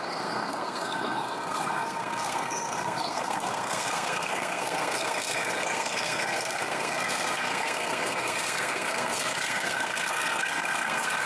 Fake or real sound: fake